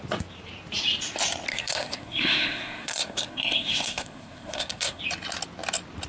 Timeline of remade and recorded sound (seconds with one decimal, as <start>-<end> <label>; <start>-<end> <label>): 0.0-1.5 recorded; 1.5-5.0 remade; 5.0-6.1 recorded